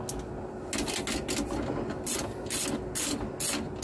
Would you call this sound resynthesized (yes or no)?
no